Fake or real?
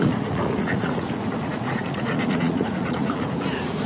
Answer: fake